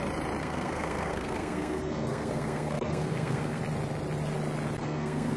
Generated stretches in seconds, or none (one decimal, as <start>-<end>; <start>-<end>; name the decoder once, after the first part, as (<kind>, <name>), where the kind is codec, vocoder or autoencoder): 0.4-3.6 (codec, SNAC); 4.8-5.4